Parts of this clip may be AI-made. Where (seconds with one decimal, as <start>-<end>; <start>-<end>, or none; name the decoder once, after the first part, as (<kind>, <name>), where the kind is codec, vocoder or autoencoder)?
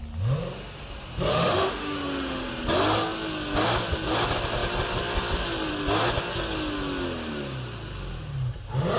1.3-2.5 (autoencoder, DAC-VAE)